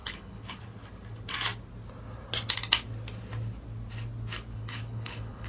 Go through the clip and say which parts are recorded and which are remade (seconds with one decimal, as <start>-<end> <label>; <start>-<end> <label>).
0.0-0.6 remade; 0.6-4.5 recorded; 4.5-5.5 remade